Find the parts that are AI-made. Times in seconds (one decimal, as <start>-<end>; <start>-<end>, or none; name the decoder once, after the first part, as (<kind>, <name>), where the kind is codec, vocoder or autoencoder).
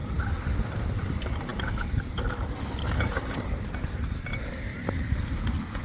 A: 0.7-4.7 (vocoder, BigVGAN v2)